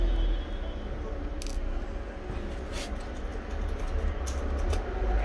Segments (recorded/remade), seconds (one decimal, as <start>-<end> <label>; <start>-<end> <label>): 0.0-5.2 recorded